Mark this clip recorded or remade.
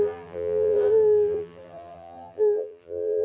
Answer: remade